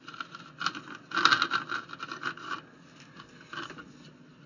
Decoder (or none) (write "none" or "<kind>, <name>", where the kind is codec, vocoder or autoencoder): none